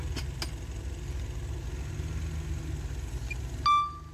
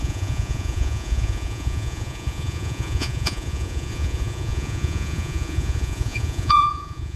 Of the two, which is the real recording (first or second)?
first